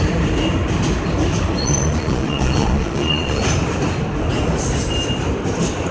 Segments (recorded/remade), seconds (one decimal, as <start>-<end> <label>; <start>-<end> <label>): 0.0-1.6 recorded; 1.6-3.4 remade; 3.4-5.9 recorded

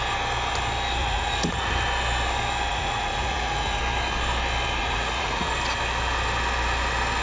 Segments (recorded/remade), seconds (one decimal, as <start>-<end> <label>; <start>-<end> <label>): 0.0-1.0 recorded; 1.0-1.7 remade; 1.7-2.7 recorded; 2.7-3.8 remade; 3.8-4.8 recorded; 4.8-5.5 remade; 5.5-7.2 recorded

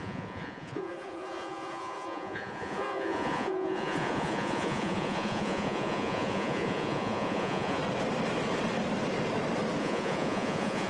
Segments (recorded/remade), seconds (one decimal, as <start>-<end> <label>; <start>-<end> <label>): 0.0-7.8 remade; 7.8-9.8 recorded; 9.8-10.9 remade

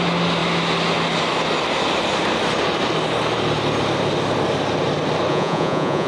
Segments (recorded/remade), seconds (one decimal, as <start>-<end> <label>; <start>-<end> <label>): 0.0-5.3 recorded; 5.3-6.1 remade

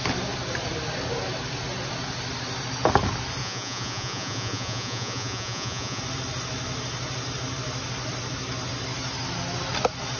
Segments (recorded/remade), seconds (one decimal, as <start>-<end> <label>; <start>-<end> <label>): 0.0-3.4 recorded; 3.4-6.0 remade; 6.0-10.2 recorded

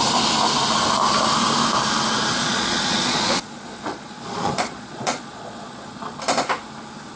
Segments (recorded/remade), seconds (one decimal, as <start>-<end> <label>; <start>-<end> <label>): 0.0-2.3 recorded; 2.3-6.2 remade; 6.2-7.2 recorded